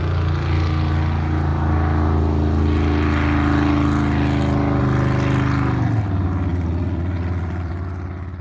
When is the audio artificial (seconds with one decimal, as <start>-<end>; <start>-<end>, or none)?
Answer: 6.5-7.7